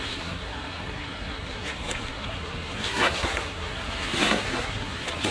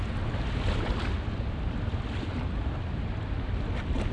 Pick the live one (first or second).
second